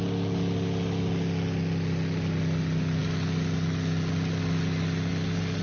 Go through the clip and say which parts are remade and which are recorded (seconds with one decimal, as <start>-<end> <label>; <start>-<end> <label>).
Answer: 0.0-5.6 recorded